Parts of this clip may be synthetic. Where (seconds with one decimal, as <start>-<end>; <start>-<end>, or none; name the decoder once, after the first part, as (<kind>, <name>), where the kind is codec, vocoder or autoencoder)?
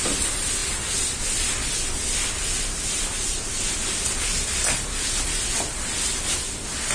none